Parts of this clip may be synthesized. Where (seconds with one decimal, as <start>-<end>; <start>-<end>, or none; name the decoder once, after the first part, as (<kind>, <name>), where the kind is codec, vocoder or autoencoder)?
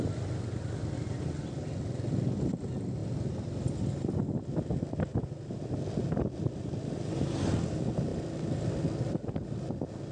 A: none